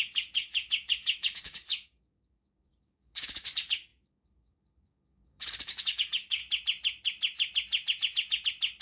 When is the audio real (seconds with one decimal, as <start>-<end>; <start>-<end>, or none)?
6.4-8.8